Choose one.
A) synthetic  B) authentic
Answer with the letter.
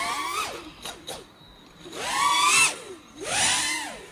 B